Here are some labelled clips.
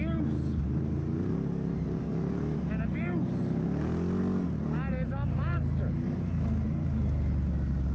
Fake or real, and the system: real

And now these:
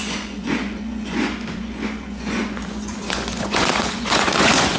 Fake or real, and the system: fake, vocoder, Vocos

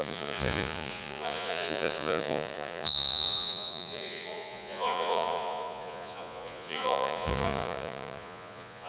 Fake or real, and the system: fake, vocoder, Vocos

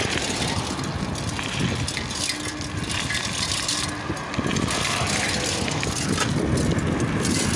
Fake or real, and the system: real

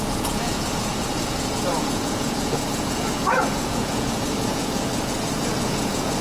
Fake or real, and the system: fake, vocoder, Vocos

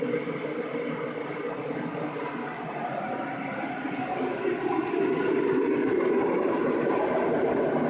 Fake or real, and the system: real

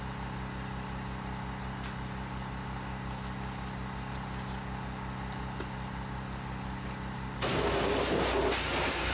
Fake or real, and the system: real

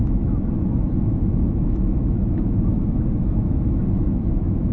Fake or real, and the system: fake, autoencoder, DAC-VAE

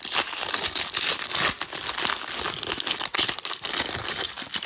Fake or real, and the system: real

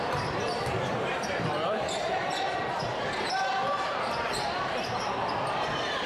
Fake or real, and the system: fake, vocoder, BigVGAN v2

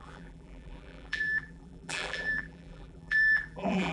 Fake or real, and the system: fake, vocoder, BigVGAN v2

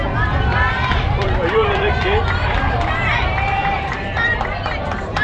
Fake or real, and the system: fake, vocoder, BigVGAN v2